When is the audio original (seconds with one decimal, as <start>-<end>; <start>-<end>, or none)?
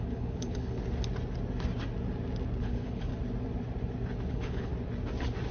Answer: 0.8-2.6; 3.1-4.3; 4.7-5.5